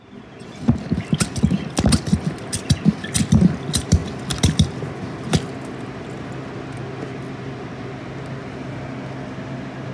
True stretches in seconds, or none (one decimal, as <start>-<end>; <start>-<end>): 0.0-9.9